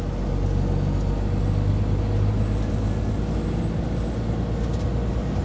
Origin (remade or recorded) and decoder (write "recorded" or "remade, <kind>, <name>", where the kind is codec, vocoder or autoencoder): recorded